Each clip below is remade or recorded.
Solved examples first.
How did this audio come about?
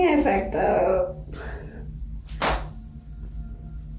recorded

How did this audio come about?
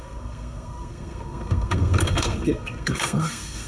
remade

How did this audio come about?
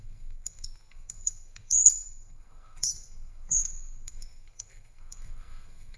remade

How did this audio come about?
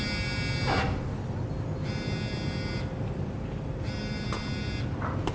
recorded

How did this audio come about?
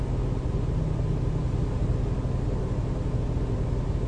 recorded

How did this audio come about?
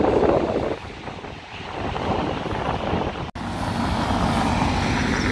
recorded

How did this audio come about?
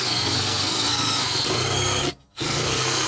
remade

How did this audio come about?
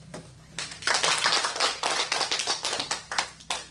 recorded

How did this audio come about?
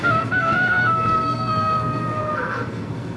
remade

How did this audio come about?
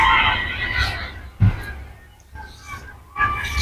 recorded